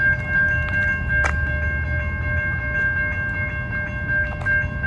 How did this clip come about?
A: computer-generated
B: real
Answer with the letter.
B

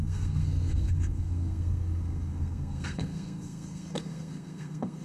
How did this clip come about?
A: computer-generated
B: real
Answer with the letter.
A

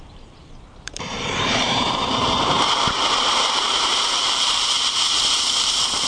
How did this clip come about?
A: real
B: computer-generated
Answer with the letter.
B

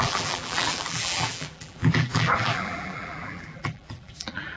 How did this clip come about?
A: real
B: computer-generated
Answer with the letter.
B